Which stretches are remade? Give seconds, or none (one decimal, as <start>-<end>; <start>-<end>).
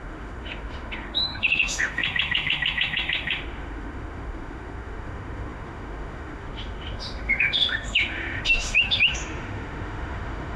0.0-10.6